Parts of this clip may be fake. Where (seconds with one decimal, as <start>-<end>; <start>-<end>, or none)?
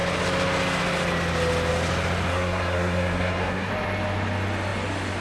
2.3-3.7